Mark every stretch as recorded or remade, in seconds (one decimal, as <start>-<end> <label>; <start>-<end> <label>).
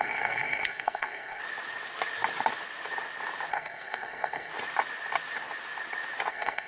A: 0.0-1.4 remade; 1.4-3.5 recorded; 3.5-4.5 remade; 4.5-6.3 recorded; 6.3-6.7 remade